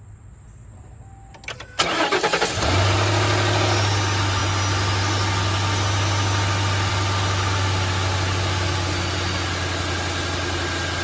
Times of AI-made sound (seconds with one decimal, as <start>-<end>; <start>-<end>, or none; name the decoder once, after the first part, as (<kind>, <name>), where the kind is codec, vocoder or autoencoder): none